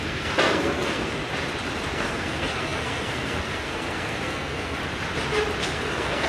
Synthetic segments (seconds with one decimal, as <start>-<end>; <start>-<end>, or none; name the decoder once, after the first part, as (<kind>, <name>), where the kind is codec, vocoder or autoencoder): 0.0-1.2 (codec, SNAC); 1.9-4.8; 5.6-6.3